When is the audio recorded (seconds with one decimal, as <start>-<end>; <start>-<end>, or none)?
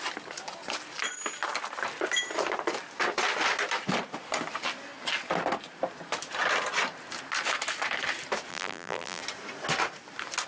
0.0-8.5; 9.2-10.5